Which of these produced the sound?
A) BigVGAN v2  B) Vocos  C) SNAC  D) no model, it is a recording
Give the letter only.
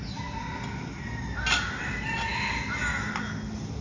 D